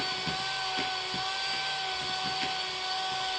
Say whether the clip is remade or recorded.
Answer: recorded